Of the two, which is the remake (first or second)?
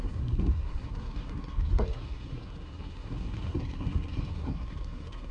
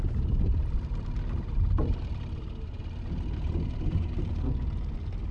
first